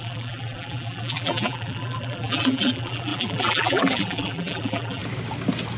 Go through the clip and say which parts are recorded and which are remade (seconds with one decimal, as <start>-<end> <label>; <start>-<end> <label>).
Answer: 0.0-5.0 remade; 5.0-5.8 recorded